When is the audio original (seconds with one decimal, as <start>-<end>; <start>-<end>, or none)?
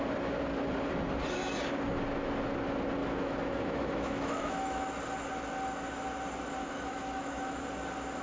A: 0.0-3.0; 4.9-6.6; 7.6-8.2